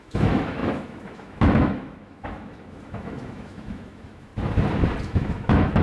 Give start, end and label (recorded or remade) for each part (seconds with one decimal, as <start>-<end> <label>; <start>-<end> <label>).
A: 0.0-4.3 remade; 4.3-5.0 recorded; 5.0-5.8 remade